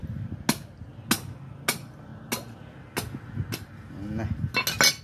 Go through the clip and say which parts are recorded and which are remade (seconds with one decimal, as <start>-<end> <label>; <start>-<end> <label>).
0.0-1.7 recorded; 1.7-2.1 remade; 2.1-5.0 recorded